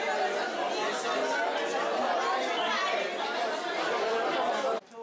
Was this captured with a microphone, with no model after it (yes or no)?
yes